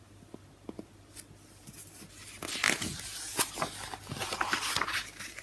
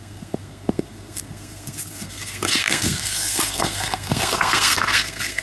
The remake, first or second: second